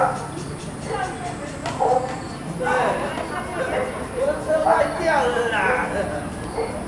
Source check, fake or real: real